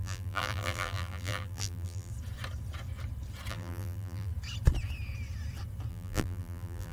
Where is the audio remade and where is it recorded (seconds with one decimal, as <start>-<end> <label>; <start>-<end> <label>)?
0.0-2.1 remade; 2.1-3.5 recorded; 3.5-4.3 remade; 4.3-5.9 recorded; 5.9-6.9 remade